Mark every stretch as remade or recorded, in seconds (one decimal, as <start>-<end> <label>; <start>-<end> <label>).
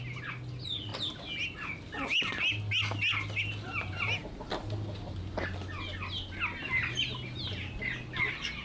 0.0-8.6 recorded